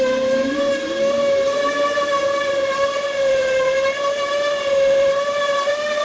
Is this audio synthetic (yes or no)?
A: yes